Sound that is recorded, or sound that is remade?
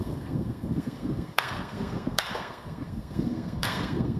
remade